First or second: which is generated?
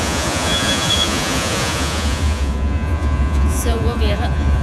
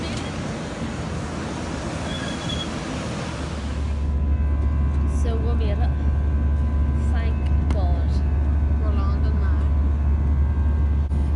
first